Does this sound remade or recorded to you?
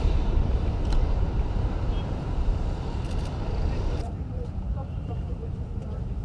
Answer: remade